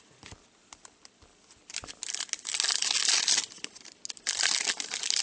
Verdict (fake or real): real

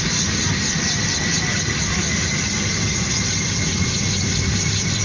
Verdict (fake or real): real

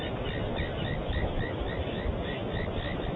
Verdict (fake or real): real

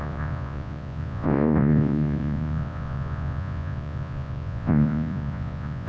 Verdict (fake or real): fake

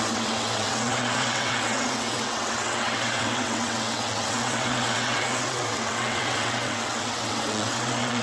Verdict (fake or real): fake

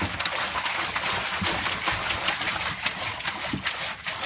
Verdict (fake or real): real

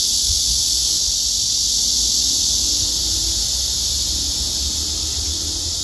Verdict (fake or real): real